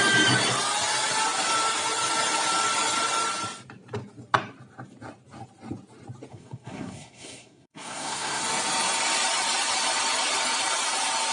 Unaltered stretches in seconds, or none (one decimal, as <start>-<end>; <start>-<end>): 0.0-6.3; 8.4-11.3